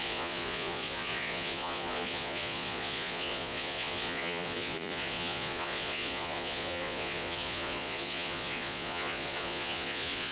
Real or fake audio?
fake